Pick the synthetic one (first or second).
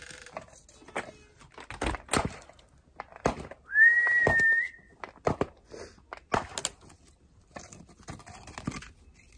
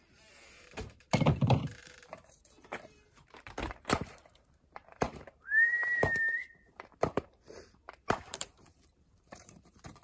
second